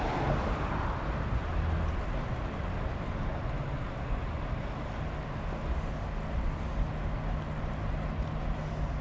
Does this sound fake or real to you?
real